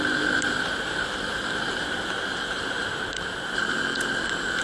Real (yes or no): no